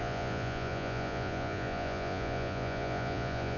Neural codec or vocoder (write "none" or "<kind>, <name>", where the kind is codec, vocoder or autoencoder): vocoder, Vocos